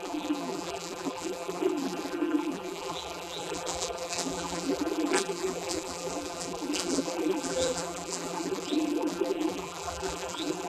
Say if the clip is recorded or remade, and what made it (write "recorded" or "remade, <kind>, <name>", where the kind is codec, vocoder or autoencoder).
remade, vocoder, BigVGAN v2